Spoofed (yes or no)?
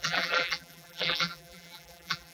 yes